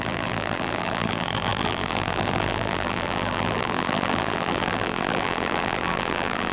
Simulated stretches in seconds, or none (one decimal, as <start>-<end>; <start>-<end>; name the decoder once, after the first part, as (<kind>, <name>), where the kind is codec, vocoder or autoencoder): 0.0-6.5 (vocoder, BigVGAN v2)